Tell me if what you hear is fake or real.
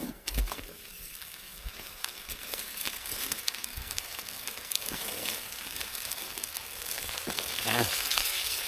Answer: fake